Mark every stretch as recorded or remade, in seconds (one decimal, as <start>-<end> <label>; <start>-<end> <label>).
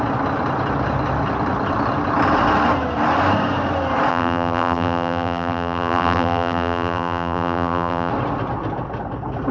0.0-4.1 recorded; 4.1-8.1 remade; 8.1-9.5 recorded